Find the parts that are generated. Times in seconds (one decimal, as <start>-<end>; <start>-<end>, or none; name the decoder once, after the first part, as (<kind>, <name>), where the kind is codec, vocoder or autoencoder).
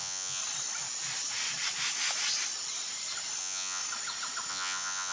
0.0-0.4 (vocoder, Vocos); 3.4-3.8; 4.5-5.1